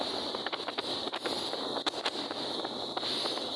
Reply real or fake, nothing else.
real